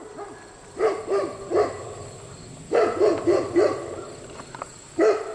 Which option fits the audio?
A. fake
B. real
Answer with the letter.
B